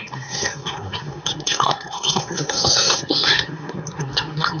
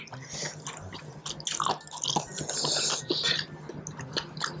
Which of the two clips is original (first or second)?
second